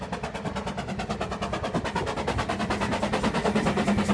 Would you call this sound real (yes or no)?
yes